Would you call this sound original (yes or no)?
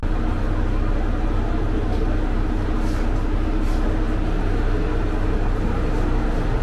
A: yes